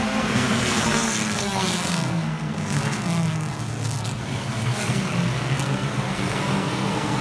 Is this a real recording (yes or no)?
no